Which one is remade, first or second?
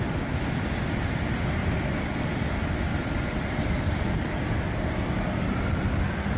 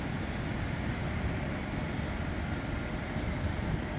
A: first